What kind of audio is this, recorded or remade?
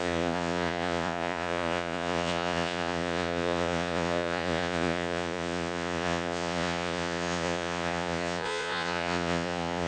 remade